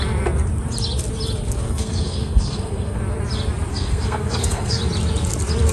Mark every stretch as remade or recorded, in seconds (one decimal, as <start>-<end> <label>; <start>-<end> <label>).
0.0-1.6 recorded; 1.6-3.0 remade; 3.0-3.7 recorded; 3.7-4.8 remade; 4.8-5.7 recorded